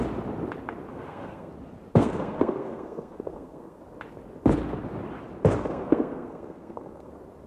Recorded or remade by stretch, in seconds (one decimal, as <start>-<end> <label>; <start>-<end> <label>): 0.0-0.9 recorded; 0.9-1.5 remade; 1.5-1.9 recorded; 1.9-3.8 remade; 3.8-5.6 recorded; 5.6-7.1 remade; 7.1-7.5 recorded